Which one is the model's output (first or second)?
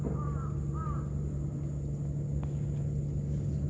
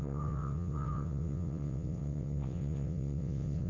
second